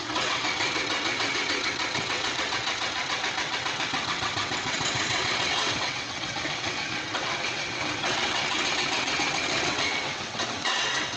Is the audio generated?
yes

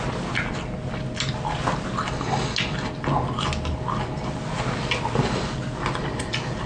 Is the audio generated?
no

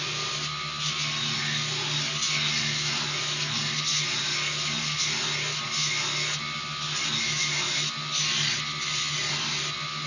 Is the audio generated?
no